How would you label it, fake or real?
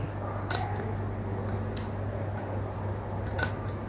real